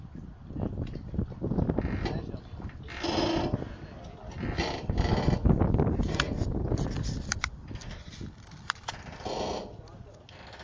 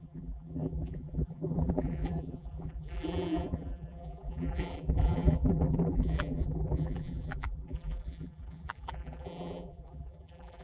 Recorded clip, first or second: first